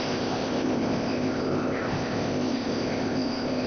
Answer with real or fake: fake